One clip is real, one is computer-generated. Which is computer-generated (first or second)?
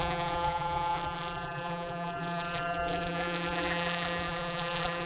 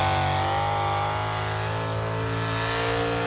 first